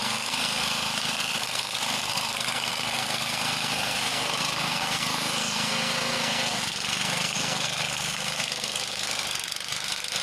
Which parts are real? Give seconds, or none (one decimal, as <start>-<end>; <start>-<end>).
none